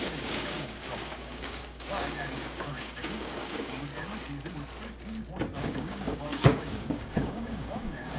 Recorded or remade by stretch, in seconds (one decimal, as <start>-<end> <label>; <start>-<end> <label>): 0.0-3.9 remade; 3.9-5.6 recorded; 5.6-8.2 remade

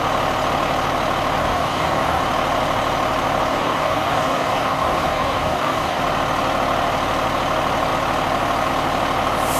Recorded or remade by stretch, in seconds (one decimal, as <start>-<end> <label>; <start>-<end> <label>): 0.0-1.4 recorded; 1.4-2.2 remade; 2.2-3.5 recorded; 3.5-6.0 remade; 6.0-9.6 recorded